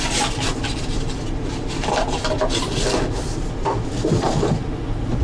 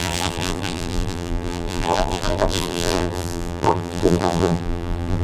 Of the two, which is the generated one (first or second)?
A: second